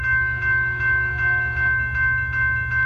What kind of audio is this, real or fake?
real